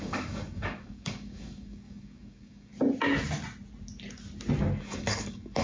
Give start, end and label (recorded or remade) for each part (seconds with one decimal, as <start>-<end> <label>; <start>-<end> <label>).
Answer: 0.0-2.7 remade; 2.7-4.8 recorded; 4.8-5.6 remade